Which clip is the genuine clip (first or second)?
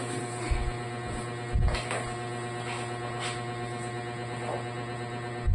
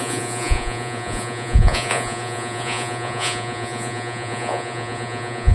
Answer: first